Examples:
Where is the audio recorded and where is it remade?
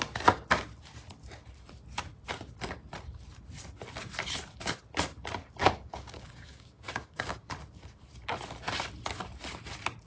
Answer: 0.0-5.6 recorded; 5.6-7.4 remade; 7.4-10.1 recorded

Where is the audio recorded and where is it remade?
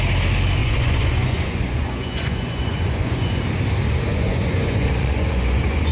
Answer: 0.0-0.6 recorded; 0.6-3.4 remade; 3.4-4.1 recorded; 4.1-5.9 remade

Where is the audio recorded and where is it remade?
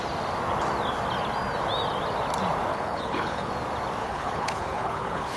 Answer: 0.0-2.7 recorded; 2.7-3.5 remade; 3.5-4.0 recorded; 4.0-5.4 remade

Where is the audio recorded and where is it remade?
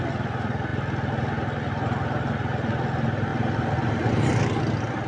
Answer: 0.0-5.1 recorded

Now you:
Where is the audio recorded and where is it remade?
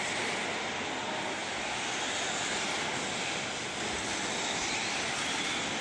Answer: 0.0-5.8 recorded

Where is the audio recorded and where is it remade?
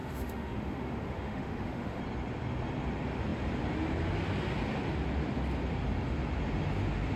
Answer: 0.0-2.0 remade; 2.0-7.2 recorded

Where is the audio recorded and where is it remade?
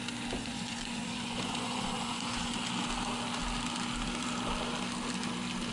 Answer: 0.0-0.4 recorded; 0.4-2.5 remade; 2.5-5.7 recorded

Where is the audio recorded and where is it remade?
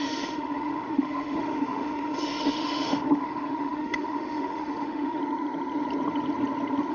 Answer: 0.0-5.2 remade; 5.2-6.9 recorded